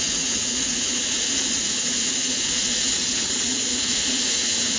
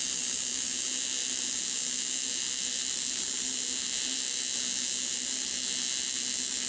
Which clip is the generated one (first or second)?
first